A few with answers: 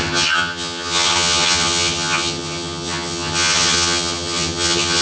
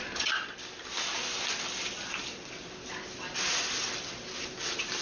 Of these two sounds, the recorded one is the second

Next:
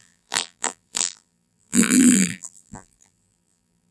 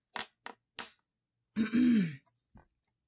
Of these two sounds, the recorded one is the second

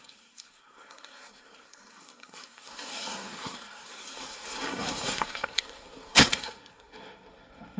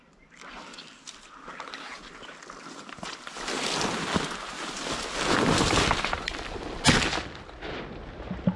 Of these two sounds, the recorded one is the second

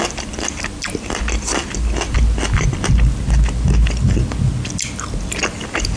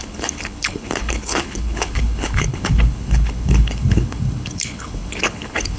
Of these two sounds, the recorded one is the first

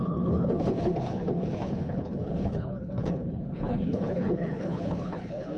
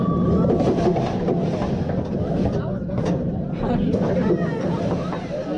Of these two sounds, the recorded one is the second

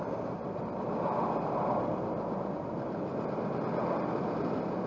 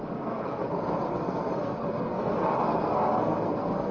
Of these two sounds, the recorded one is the first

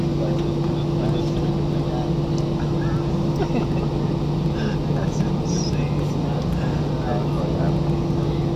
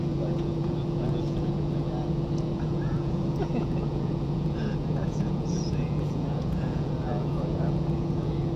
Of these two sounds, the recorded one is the first